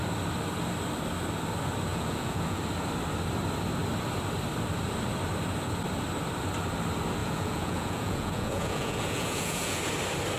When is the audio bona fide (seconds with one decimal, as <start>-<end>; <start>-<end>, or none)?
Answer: 0.0-1.9; 2.6-7.2; 9.8-10.4